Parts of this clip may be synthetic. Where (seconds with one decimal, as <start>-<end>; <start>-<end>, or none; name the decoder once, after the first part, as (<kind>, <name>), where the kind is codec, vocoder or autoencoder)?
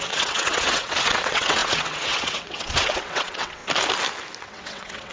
0.0-3.6 (vocoder, WaveNeXt); 4.4-5.1